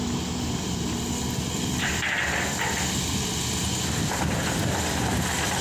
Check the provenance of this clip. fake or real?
real